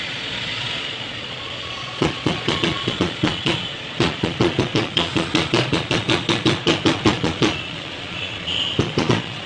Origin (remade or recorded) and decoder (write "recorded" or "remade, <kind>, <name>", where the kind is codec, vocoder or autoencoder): remade, vocoder, Vocos